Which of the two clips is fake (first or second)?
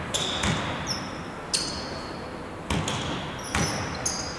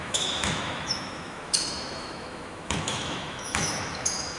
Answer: second